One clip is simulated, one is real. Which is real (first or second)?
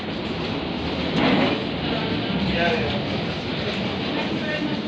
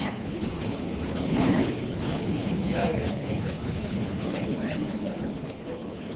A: first